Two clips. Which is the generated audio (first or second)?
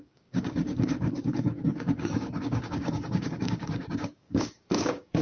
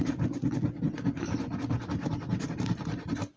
first